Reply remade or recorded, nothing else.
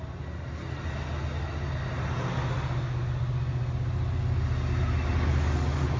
recorded